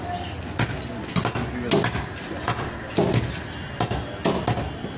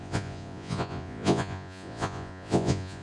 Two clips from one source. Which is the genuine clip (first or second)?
first